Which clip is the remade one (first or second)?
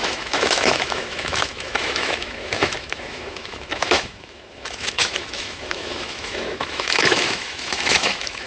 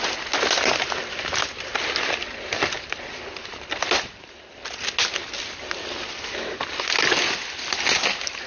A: first